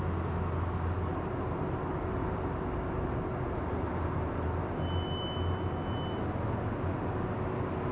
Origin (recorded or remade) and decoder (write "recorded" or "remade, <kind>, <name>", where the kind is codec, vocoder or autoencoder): recorded